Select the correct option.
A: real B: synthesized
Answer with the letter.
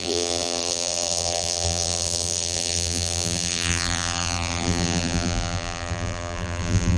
B